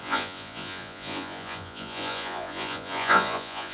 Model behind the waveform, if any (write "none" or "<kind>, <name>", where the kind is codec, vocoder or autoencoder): vocoder, Vocos